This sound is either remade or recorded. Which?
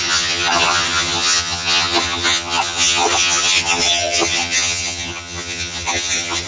remade